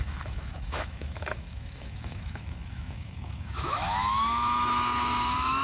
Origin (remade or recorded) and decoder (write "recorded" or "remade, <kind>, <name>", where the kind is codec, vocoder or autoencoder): remade, autoencoder, DAC-VAE